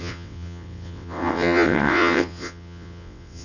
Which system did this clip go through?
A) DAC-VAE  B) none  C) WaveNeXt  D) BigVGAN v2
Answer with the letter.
C